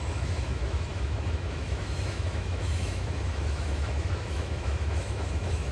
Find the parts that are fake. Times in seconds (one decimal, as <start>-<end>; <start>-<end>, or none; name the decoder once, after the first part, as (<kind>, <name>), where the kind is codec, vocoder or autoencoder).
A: 0.0-5.7 (autoencoder, DAC-VAE)